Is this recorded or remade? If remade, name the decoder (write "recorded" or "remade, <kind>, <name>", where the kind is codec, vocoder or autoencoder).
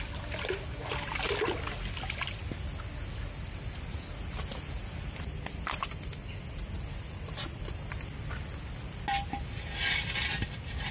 recorded